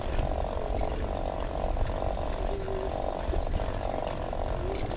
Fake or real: real